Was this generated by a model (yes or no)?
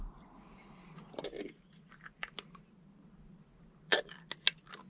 no